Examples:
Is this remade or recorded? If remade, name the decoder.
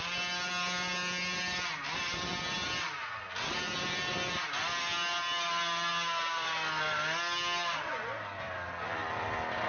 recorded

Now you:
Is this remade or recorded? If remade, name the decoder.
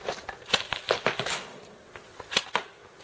recorded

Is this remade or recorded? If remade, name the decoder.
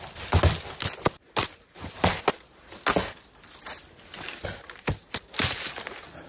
recorded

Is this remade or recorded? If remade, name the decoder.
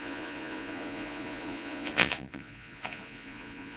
remade, vocoder, Vocos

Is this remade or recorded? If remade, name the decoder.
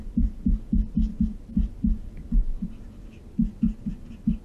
recorded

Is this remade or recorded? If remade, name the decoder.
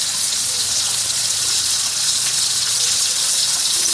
remade, vocoder, Vocos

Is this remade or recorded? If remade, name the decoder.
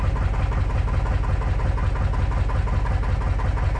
recorded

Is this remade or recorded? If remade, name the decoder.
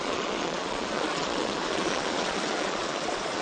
remade, vocoder, Vocos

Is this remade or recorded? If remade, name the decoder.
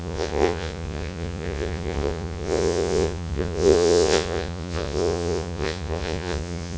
remade, vocoder, Vocos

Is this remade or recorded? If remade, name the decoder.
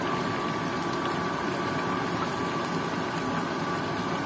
recorded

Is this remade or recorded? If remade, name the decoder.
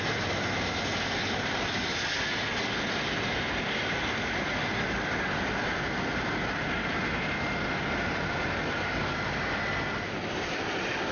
recorded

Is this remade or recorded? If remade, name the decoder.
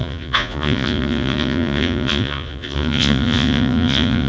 remade, vocoder, Vocos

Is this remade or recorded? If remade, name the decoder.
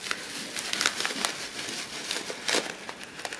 recorded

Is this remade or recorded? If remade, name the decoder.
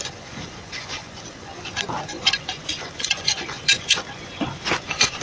remade, vocoder, Vocos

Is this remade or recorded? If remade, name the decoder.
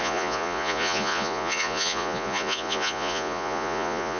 remade, vocoder, Vocos